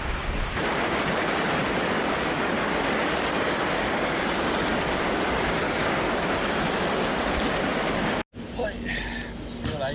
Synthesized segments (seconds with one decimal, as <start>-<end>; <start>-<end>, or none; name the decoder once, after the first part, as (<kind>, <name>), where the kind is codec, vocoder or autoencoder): 1.6-4.2 (codec, DAC); 5.6-6.2